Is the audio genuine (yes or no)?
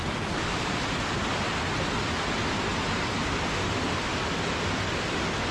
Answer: yes